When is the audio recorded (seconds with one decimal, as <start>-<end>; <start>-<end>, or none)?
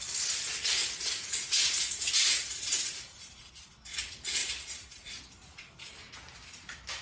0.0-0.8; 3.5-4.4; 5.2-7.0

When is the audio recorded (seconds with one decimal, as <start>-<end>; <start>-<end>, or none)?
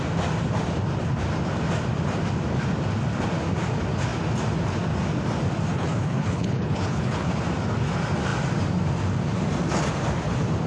0.0-5.7; 7.3-10.7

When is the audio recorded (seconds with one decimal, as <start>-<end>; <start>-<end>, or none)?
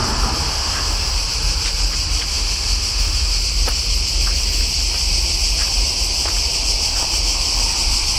0.0-0.5; 1.1-2.3; 3.4-8.2